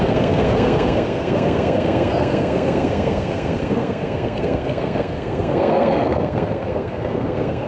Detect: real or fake fake